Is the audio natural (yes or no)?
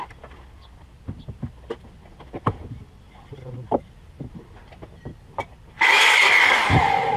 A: yes